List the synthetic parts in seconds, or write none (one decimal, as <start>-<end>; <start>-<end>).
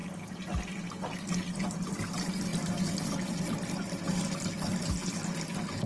none